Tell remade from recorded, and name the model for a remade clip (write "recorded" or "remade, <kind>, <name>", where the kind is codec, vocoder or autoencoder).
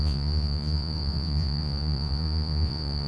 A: remade, vocoder, Vocos